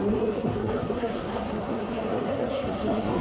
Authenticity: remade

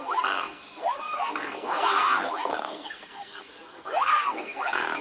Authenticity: remade